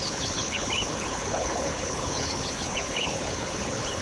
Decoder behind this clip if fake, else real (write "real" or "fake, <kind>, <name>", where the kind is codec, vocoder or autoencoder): fake, codec, HILCodec